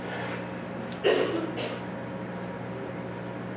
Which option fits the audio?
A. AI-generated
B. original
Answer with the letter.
B